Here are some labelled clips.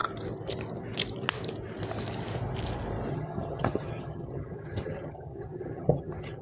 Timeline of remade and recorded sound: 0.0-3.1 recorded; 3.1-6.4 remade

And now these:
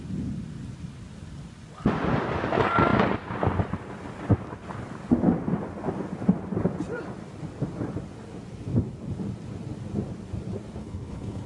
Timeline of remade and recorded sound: 0.0-10.8 recorded; 10.8-11.5 remade